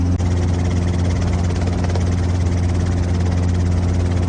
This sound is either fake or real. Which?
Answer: real